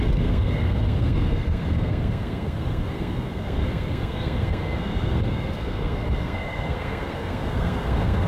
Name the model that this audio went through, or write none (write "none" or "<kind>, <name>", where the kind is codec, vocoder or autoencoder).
codec, SNAC